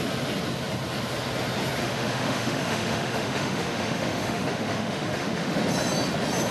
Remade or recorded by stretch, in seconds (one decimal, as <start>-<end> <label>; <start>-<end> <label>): 0.0-1.8 recorded; 1.8-5.6 remade; 5.6-6.5 recorded